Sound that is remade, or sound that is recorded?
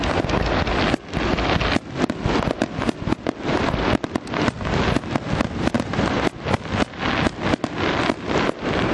recorded